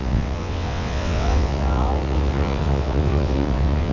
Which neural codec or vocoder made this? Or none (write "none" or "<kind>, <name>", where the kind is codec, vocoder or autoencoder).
vocoder, WaveNeXt